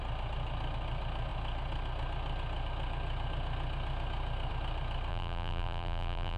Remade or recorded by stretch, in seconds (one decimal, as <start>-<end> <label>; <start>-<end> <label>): 0.0-5.1 recorded; 5.1-6.4 remade